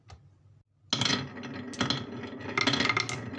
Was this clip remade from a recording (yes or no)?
no